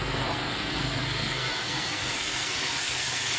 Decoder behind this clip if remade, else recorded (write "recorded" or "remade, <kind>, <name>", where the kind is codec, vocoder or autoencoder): remade, codec, SNAC